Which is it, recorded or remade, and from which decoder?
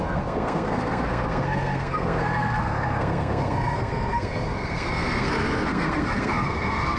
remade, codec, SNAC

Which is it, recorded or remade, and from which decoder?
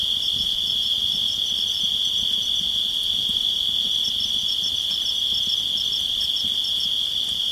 recorded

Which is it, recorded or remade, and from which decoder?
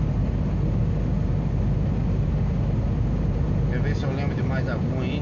recorded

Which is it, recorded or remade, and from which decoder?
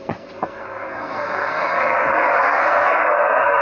remade, codec, SNAC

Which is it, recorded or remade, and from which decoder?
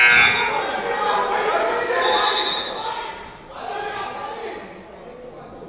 recorded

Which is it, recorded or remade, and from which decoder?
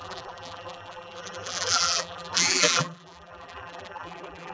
remade, vocoder, BigVGAN v2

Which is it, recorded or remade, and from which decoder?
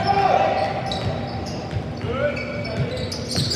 recorded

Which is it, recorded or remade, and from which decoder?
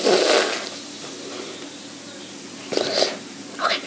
recorded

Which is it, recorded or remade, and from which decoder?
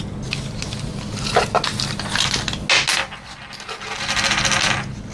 recorded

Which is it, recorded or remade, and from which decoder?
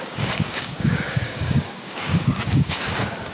remade, codec, DAC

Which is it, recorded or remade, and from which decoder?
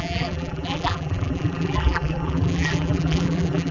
remade, vocoder, BigVGAN v2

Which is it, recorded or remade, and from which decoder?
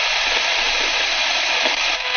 remade, vocoder, BigVGAN v2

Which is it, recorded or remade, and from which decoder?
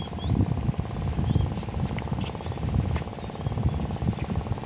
recorded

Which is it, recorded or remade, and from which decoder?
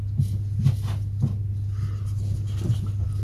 recorded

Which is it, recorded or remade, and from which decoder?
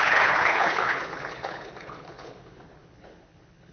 remade, codec, HILCodec